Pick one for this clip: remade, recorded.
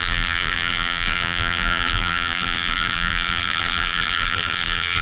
remade